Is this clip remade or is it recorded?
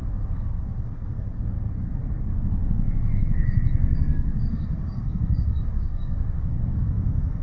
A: remade